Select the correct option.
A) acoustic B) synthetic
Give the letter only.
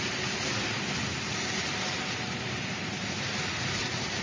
B